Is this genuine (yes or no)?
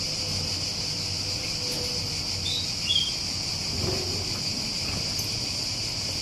yes